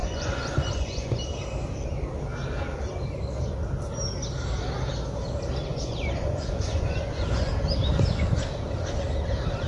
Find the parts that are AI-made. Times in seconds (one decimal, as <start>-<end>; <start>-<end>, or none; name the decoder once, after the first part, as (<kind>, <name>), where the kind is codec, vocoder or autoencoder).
0.0-1.2 (vocoder, Vocos); 5.7-7.5